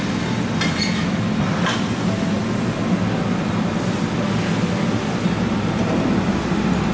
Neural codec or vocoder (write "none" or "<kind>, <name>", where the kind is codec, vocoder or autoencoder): none